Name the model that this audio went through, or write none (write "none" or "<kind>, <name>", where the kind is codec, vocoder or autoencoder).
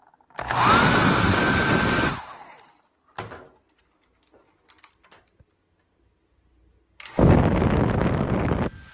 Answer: none